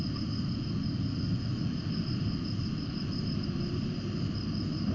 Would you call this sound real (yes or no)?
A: yes